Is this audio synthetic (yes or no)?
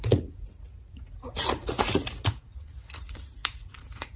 yes